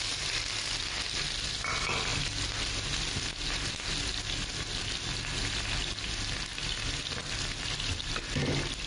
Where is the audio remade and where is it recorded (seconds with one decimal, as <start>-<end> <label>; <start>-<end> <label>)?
0.0-7.2 recorded; 7.2-8.1 remade; 8.1-8.9 recorded